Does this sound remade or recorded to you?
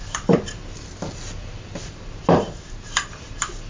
remade